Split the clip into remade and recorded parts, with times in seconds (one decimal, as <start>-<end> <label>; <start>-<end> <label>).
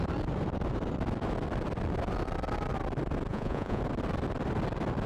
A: 0.0-3.3 recorded; 3.3-3.8 remade; 3.8-5.1 recorded